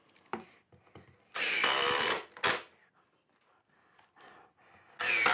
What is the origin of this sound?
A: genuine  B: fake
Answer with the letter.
A